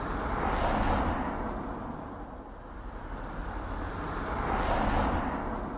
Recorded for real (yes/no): yes